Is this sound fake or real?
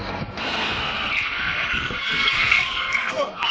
fake